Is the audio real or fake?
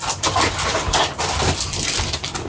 real